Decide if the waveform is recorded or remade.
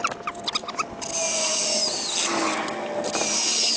recorded